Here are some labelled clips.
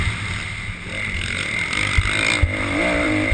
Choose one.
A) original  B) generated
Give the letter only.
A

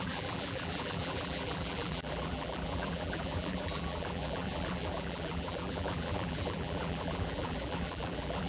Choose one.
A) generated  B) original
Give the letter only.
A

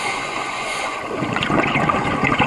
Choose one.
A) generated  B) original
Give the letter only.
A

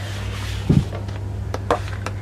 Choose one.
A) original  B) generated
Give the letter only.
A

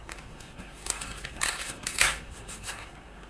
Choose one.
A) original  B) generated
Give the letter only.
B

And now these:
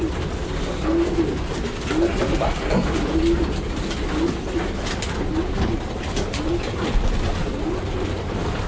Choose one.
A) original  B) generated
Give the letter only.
A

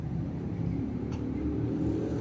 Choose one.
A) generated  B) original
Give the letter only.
A